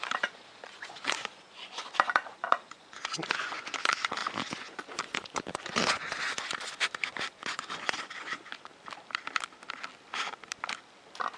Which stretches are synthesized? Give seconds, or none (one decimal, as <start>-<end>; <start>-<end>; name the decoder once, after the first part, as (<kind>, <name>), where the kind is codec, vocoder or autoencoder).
0.0-8.7 (vocoder, Vocos)